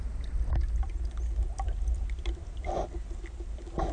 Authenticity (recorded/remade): recorded